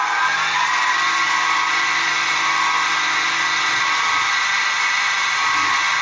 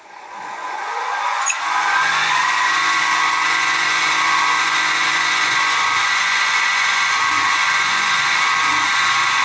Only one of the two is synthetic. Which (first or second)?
second